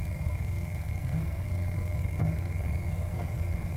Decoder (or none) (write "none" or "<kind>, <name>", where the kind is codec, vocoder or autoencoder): codec, SNAC